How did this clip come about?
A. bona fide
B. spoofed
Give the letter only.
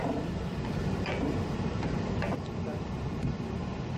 B